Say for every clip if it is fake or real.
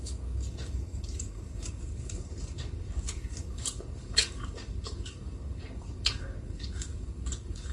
fake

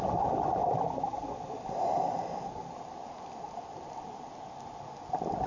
real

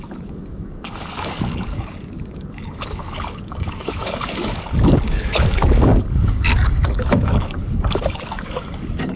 fake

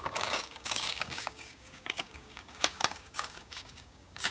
fake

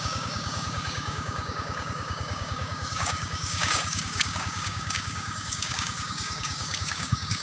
fake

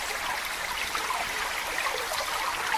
real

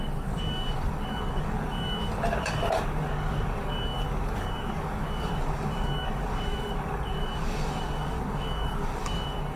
fake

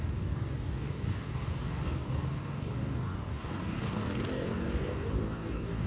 fake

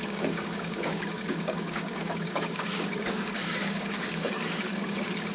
fake